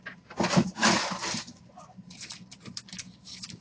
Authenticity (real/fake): fake